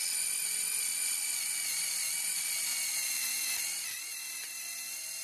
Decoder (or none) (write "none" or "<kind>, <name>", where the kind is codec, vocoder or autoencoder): none